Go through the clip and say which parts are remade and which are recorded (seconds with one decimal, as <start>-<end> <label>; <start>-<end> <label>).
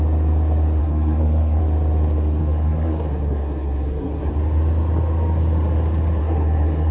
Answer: 0.0-0.8 recorded; 0.8-1.6 remade; 1.6-2.4 recorded; 2.4-4.3 remade; 4.3-6.2 recorded; 6.2-6.9 remade